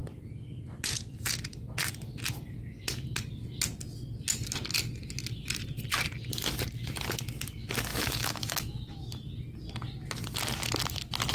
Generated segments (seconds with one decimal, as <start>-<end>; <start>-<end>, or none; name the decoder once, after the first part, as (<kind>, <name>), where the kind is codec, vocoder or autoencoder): 7.9-8.9 (autoencoder, DAC-VAE)